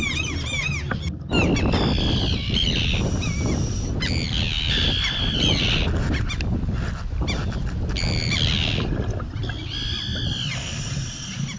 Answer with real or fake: real